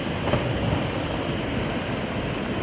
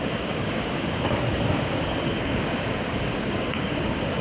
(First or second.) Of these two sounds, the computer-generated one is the second